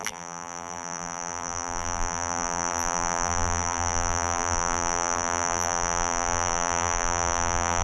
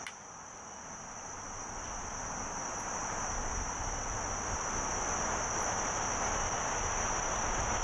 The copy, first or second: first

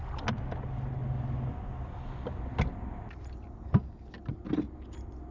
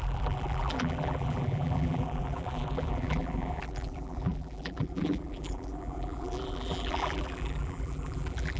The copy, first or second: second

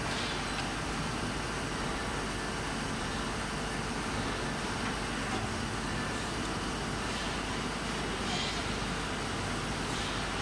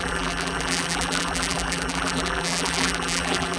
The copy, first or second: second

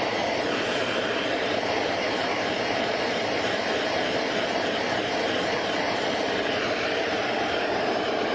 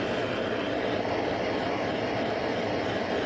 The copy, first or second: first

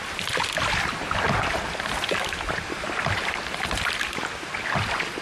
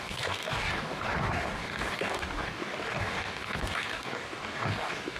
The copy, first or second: second